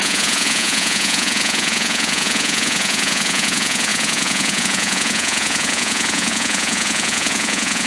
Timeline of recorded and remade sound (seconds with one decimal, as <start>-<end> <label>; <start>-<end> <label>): 0.0-7.9 remade